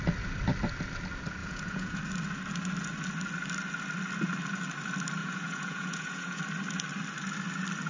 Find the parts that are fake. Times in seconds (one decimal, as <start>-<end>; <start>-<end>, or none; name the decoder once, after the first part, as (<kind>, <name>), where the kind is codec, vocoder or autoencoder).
1.4-2.0 (vocoder, Vocos); 5.2-6.4